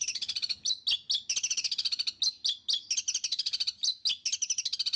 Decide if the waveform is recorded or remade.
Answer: recorded